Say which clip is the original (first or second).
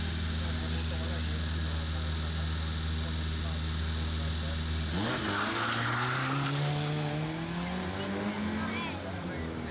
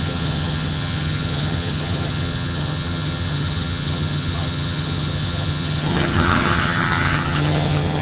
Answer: first